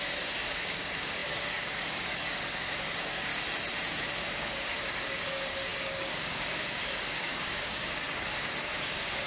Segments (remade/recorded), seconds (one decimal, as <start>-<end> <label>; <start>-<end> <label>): 0.0-3.3 remade; 3.3-4.2 recorded; 4.2-9.3 remade